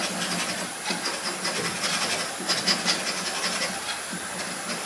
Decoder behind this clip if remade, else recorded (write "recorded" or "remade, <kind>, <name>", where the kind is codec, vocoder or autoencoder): recorded